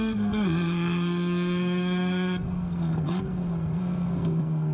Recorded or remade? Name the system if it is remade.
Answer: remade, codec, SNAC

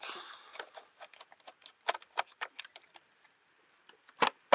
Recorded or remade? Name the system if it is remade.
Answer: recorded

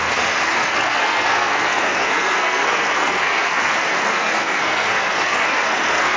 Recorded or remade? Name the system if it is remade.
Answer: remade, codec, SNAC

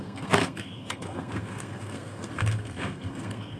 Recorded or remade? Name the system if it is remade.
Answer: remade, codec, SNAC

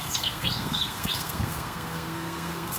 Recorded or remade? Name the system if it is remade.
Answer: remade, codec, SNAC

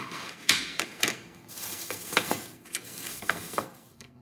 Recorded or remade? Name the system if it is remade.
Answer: remade, codec, SNAC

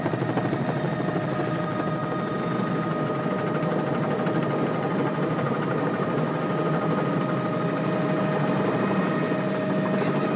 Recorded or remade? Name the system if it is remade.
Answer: recorded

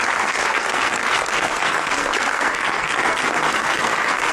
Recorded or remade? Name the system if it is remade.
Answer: remade, codec, SNAC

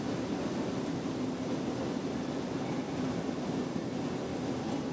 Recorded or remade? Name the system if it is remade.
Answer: recorded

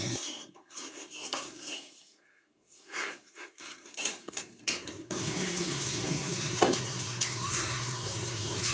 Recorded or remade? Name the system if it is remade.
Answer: remade, codec, SNAC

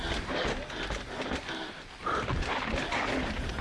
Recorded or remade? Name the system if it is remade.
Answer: recorded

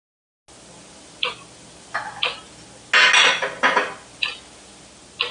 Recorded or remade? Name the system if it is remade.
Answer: recorded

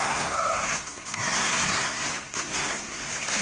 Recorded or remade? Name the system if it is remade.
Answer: remade, codec, SNAC